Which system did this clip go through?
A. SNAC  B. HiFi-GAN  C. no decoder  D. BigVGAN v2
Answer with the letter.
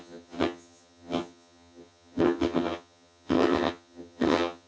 B